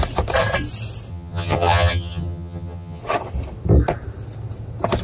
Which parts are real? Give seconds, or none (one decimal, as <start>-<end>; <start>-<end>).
0.0-1.1; 3.0-5.0

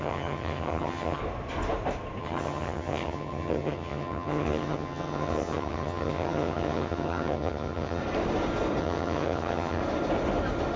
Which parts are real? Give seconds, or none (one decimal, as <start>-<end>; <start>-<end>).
1.2-2.2; 8.0-8.8; 9.8-10.8

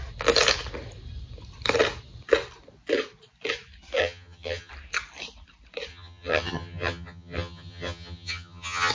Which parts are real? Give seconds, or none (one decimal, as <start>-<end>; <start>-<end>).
0.0-4.0; 4.7-5.9

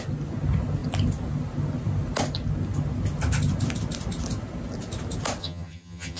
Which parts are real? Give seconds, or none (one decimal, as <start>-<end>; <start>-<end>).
0.0-5.4

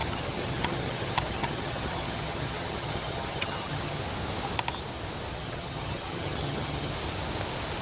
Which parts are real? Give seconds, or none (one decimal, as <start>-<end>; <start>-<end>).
4.0-5.3; 6.9-7.8

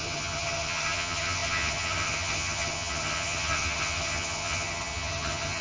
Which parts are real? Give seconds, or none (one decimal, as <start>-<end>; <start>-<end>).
none

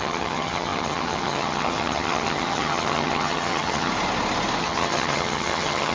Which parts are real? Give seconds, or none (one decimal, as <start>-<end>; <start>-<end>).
3.9-4.6

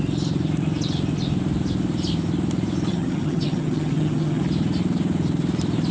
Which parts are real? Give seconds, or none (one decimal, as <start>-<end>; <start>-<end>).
0.0-2.9; 4.4-5.9